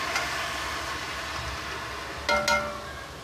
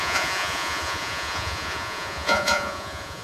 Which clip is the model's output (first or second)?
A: second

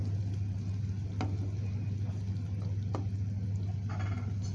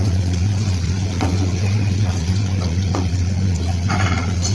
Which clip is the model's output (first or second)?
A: second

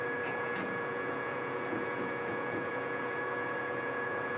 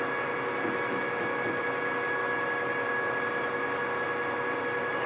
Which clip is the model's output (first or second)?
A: first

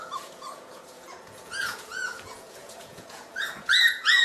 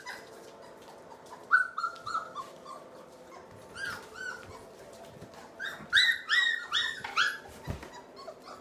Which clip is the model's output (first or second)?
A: first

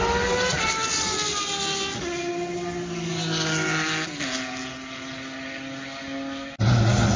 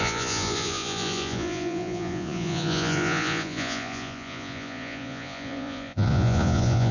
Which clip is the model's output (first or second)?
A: second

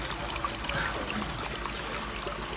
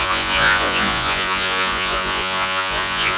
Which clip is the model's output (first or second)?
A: second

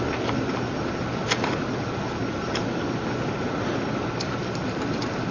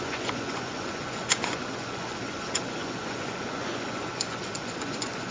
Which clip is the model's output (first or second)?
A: second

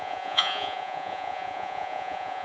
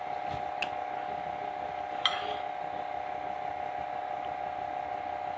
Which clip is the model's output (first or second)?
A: first